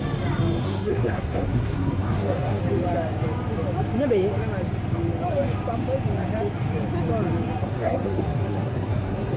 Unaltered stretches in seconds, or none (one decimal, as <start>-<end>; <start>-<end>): 0.0-0.6; 2.6-7.6